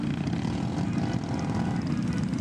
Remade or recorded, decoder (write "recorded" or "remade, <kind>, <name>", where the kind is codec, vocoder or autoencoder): recorded